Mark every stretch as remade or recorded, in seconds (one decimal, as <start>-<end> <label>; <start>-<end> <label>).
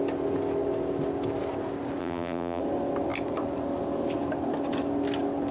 0.0-2.0 recorded; 2.0-2.6 remade; 2.6-5.5 recorded